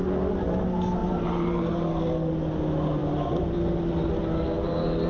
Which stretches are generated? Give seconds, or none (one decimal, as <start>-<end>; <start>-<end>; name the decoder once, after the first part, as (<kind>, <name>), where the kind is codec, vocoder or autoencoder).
1.0-1.7 (vocoder, BigVGAN v2)